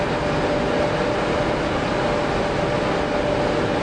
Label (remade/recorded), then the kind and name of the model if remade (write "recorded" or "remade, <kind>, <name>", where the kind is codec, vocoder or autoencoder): recorded